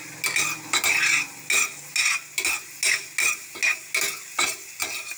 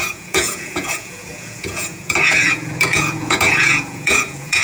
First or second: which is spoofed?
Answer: second